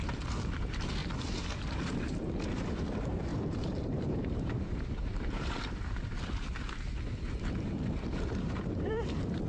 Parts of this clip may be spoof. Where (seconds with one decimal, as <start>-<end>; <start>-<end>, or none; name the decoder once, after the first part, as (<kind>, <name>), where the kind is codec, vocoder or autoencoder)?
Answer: 0.0-1.0 (vocoder, BigVGAN v2); 1.6-9.5